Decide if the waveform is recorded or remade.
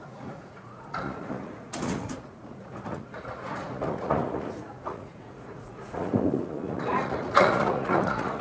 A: remade